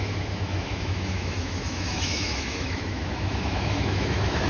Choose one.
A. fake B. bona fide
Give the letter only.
A